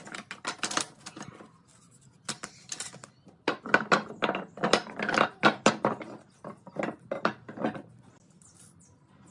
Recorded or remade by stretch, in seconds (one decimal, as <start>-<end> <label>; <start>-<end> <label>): 0.0-9.3 recorded